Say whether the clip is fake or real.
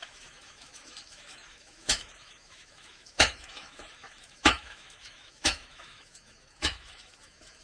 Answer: fake